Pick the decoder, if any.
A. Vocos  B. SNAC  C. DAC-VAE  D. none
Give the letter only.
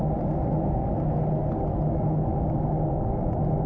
D